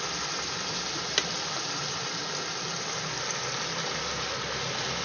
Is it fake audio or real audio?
real